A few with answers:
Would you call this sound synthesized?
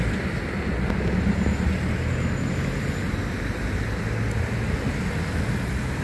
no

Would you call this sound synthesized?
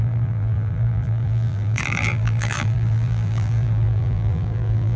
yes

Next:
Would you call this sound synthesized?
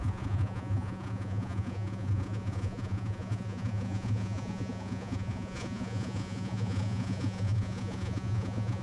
yes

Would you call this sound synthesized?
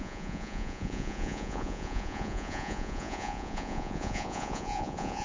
yes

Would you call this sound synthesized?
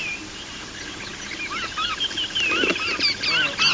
no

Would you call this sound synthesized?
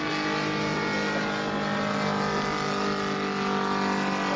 no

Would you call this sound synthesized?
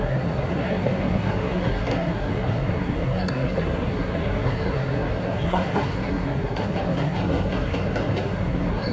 yes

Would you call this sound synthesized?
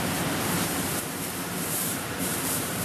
yes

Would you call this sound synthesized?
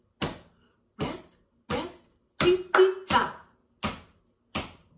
no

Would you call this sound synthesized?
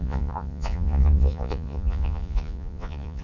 yes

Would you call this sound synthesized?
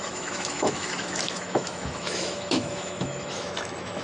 yes